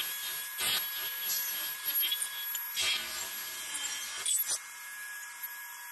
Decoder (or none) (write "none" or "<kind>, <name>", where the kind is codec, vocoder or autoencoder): none